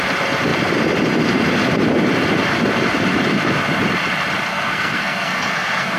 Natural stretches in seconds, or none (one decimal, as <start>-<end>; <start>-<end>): 0.0-4.5